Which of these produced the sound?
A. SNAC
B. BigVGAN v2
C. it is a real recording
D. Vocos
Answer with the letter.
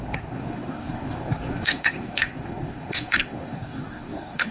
A